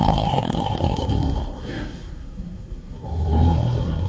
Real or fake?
fake